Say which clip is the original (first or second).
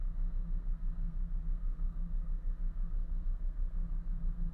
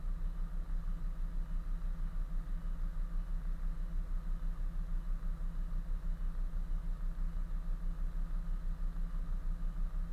second